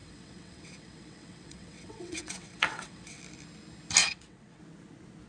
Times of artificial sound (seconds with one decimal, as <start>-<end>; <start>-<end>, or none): 0.0-3.2; 4.0-4.6